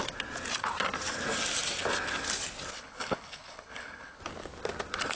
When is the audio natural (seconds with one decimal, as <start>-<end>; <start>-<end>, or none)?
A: 0.0-2.7; 4.2-5.2